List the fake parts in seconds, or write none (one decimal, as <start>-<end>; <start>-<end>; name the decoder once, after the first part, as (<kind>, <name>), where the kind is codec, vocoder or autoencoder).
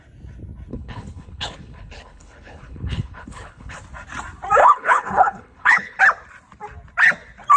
0.7-3.8 (codec, HILCodec); 4.6-6.0